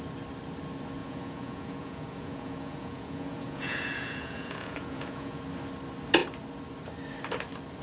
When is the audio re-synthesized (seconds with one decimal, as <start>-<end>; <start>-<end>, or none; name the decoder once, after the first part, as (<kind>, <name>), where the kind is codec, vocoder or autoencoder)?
1.0-5.4 (vocoder, Vocos)